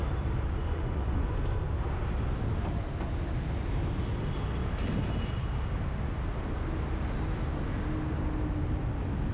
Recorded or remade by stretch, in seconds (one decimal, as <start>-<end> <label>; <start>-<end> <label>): 0.0-0.6 recorded; 0.6-1.4 remade; 1.4-9.3 recorded